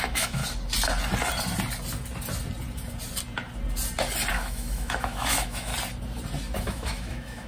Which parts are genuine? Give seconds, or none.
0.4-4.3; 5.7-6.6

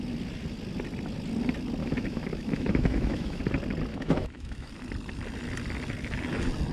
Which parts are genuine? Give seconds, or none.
0.0-1.8; 3.4-3.9; 4.7-6.7

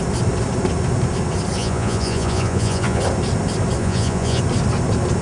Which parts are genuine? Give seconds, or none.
0.0-1.6; 3.0-3.8; 4.4-5.2

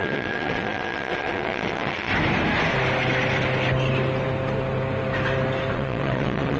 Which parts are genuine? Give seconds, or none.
2.1-5.7

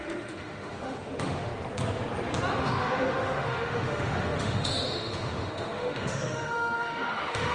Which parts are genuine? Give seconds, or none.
1.5-2.6

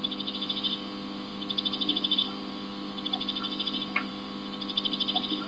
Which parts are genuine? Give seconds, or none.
0.0-5.5